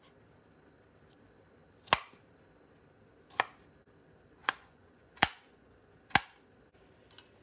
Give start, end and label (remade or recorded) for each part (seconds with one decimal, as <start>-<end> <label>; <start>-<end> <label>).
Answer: 0.0-4.4 recorded; 4.4-5.9 remade; 5.9-7.4 recorded